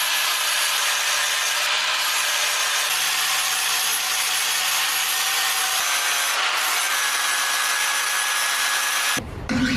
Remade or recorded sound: recorded